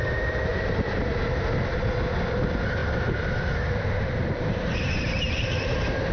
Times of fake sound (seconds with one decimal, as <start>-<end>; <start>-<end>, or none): 0.5-1.0; 2.8-6.1